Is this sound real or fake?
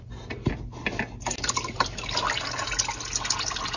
real